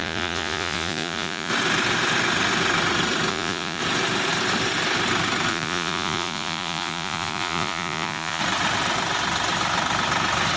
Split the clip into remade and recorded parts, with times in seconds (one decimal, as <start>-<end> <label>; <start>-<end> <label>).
0.0-1.5 remade; 1.5-3.3 recorded; 3.3-3.8 remade; 3.8-5.5 recorded; 5.5-8.4 remade; 8.4-10.6 recorded